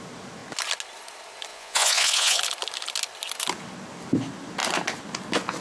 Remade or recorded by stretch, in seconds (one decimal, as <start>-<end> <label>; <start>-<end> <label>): 0.0-1.5 recorded; 1.5-2.4 remade; 2.4-5.6 recorded

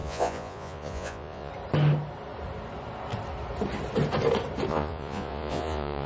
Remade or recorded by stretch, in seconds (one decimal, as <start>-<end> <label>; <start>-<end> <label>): 0.0-1.5 remade; 1.5-4.7 recorded; 4.7-6.1 remade

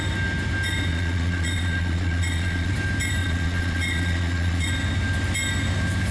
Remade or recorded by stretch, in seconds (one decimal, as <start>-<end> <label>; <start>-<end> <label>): 0.0-0.9 recorded; 0.9-2.7 remade; 2.7-3.2 recorded; 3.2-4.7 remade; 4.7-6.1 recorded

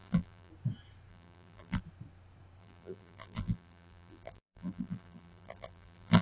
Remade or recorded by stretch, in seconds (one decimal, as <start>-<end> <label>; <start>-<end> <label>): 0.0-0.5 remade; 0.5-1.1 recorded; 1.1-1.8 remade; 1.8-2.6 recorded; 2.6-6.2 remade